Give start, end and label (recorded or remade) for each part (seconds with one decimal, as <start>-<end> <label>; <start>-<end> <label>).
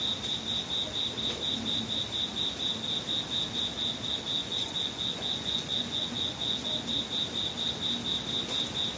0.0-4.4 recorded; 4.4-6.7 remade; 6.7-9.0 recorded